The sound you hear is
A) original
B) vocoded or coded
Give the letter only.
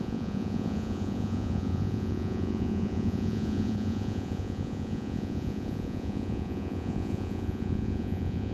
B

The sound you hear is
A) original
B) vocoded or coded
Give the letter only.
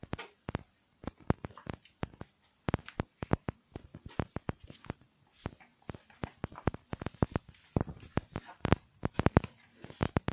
A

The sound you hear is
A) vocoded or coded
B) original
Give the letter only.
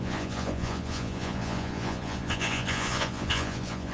A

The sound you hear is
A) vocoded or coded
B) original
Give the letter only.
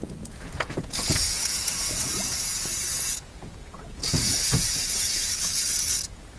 A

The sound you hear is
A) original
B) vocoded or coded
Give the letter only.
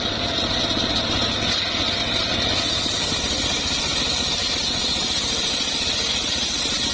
A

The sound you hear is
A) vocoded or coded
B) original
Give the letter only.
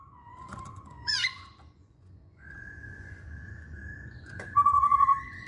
A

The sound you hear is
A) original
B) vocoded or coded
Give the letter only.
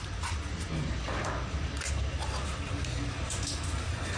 A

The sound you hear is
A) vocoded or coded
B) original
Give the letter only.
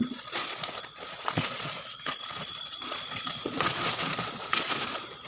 A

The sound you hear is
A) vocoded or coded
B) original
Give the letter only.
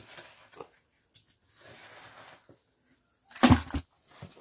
B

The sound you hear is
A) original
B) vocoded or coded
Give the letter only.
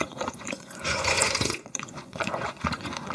B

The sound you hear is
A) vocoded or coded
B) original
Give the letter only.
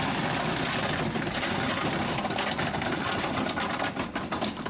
B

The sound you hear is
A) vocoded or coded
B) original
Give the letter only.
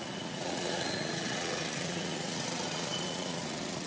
A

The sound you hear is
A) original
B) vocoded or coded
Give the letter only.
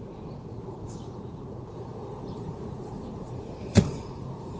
B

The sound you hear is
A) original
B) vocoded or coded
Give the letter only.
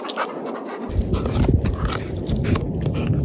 A